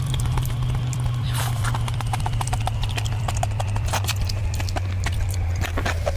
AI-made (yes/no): yes